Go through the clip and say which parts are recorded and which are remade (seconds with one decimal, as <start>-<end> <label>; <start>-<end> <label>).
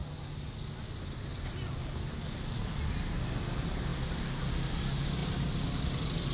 0.0-6.3 recorded